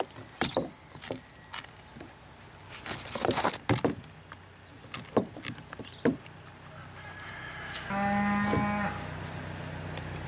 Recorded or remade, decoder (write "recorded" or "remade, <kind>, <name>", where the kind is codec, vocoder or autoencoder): recorded